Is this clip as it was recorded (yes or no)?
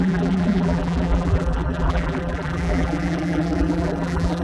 no